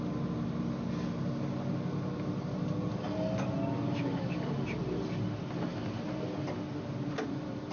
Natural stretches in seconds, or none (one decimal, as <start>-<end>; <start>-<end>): 0.0-7.7